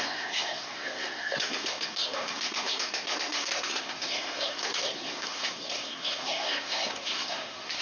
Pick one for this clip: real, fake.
fake